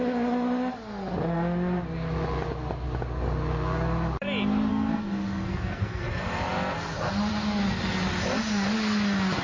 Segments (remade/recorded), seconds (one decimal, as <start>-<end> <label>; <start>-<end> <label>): 0.0-4.7 recorded; 4.7-6.1 remade; 6.1-9.4 recorded